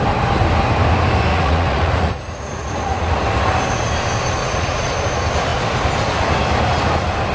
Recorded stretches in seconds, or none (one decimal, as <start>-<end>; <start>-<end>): 0.0-1.3; 3.1-4.4; 4.9-7.3